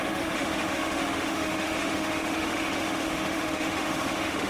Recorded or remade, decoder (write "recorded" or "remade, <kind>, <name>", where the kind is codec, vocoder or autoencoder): remade, autoencoder, DAC-VAE